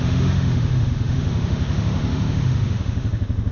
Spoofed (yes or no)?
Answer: yes